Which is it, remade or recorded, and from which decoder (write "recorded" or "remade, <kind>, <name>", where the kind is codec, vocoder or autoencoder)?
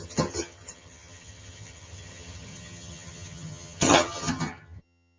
remade, vocoder, HiFi-GAN